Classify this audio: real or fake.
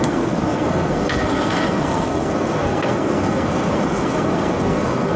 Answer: fake